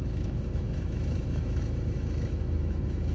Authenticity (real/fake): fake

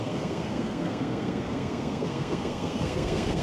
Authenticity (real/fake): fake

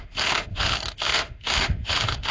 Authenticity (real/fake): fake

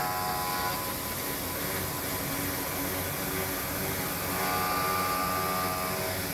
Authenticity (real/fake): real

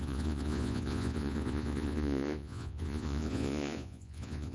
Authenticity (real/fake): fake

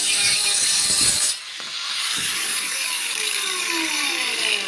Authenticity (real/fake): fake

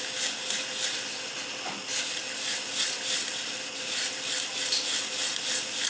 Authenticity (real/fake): real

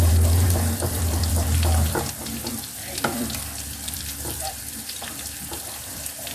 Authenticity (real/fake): fake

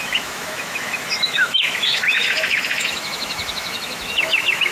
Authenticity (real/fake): fake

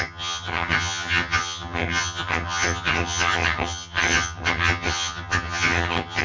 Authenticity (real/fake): fake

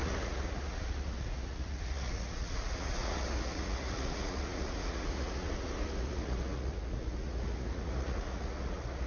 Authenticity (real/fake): fake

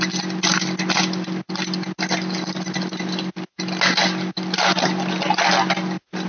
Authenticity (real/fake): real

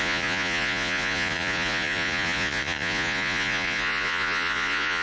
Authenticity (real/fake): fake